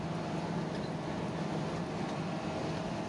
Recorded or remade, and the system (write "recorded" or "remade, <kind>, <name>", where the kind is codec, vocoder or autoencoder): recorded